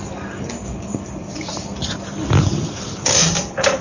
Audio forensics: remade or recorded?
recorded